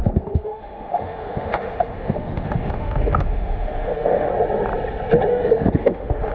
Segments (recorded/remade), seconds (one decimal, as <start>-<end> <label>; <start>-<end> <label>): 0.0-4.3 remade; 4.3-5.3 recorded; 5.3-6.3 remade